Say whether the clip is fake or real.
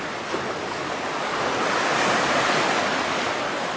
real